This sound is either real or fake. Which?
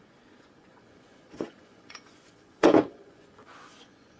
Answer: fake